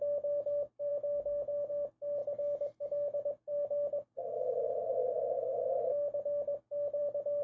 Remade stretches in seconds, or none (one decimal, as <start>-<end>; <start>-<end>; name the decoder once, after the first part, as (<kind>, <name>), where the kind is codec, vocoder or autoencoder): none

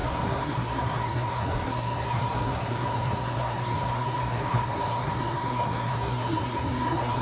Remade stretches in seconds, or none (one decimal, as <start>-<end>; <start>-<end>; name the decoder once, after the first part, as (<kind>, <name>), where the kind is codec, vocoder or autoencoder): 0.0-7.2 (codec, SNAC)

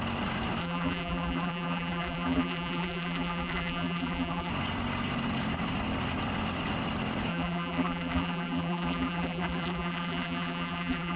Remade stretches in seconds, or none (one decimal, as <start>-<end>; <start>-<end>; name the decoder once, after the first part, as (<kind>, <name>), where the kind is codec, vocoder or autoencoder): 0.6-4.5 (vocoder, BigVGAN v2); 7.3-11.2

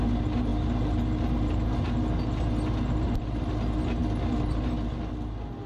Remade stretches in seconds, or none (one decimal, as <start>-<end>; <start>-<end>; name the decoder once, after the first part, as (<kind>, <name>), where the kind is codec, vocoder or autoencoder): none

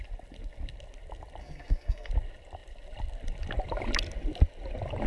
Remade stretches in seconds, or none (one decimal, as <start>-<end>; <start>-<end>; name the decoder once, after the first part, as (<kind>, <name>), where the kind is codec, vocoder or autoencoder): 1.4-2.1 (codec, SNAC)

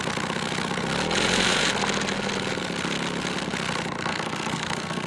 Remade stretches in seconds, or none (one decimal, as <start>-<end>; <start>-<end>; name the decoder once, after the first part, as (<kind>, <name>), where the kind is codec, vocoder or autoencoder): 4.1-5.1 (codec, SNAC)